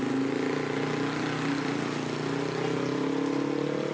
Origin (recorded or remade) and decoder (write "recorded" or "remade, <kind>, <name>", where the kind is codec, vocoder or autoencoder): recorded